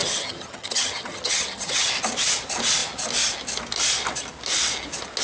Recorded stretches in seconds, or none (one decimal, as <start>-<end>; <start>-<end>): 1.9-5.2